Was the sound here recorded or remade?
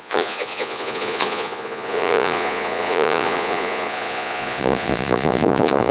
remade